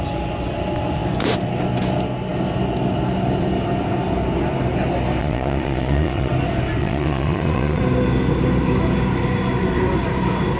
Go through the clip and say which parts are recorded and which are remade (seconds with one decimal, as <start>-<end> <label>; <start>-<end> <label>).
0.0-5.2 recorded; 5.2-6.3 remade; 6.3-6.8 recorded; 6.8-7.8 remade; 7.8-10.6 recorded